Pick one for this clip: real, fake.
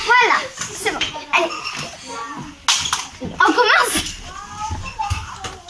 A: real